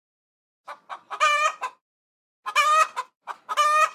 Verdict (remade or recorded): recorded